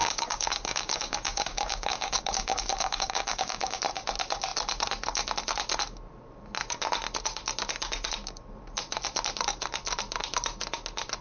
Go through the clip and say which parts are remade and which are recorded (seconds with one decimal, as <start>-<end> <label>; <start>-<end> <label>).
0.0-3.8 remade; 3.8-11.2 recorded